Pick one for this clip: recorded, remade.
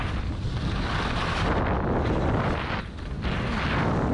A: recorded